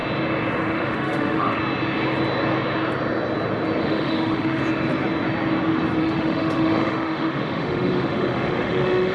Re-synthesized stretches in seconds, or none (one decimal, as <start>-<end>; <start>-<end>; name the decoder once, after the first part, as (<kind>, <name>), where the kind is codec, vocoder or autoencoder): 0.6-1.6 (autoencoder, DAC-VAE); 3.8-4.6; 6.0-9.1